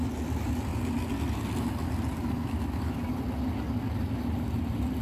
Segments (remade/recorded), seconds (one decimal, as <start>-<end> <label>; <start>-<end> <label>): 0.0-5.0 recorded